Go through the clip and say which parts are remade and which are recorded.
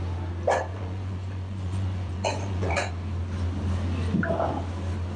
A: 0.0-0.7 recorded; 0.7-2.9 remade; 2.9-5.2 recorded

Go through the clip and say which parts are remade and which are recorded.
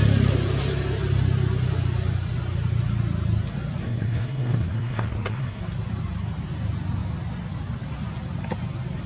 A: 0.0-3.8 recorded; 3.8-5.6 remade; 5.6-9.1 recorded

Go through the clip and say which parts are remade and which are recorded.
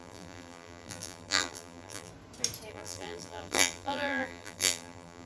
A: 0.0-2.1 remade; 2.1-2.7 recorded; 2.7-5.3 remade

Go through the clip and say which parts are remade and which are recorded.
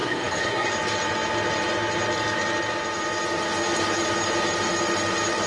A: 0.0-0.7 remade; 0.7-5.5 recorded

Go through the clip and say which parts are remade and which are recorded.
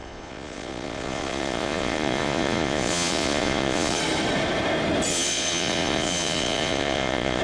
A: 0.0-4.0 remade; 4.0-5.1 recorded; 5.1-7.4 remade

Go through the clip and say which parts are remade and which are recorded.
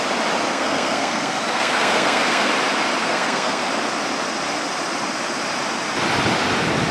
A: 0.0-0.5 recorded; 0.5-2.5 remade; 2.5-3.0 recorded; 3.0-3.6 remade; 3.6-6.9 recorded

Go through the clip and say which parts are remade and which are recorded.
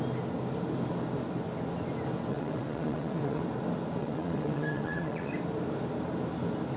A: 0.0-2.3 recorded; 2.3-3.4 remade; 3.4-4.0 recorded; 4.0-5.3 remade; 5.3-6.8 recorded